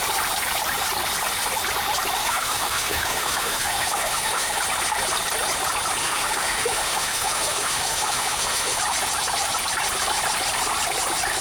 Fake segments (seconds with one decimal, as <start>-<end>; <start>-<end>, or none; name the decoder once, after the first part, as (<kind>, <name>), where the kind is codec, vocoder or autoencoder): 2.2-4.6 (autoencoder, DAC-VAE); 6.0-8.8